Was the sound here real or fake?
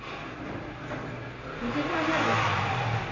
real